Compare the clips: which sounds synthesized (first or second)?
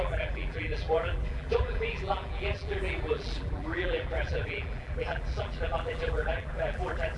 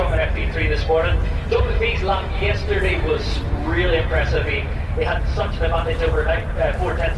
first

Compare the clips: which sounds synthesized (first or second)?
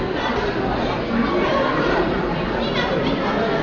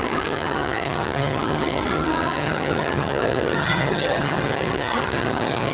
second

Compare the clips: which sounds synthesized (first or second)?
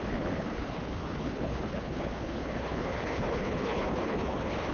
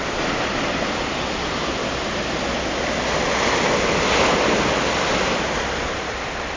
first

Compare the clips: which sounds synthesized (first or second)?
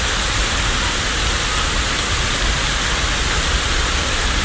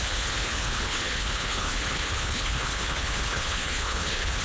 second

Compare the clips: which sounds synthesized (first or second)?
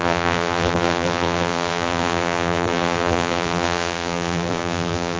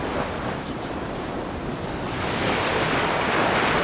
first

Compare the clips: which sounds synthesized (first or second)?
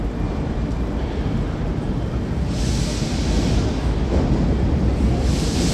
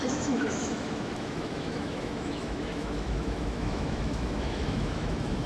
second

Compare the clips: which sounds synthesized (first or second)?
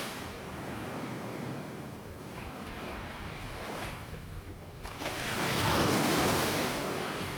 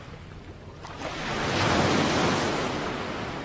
first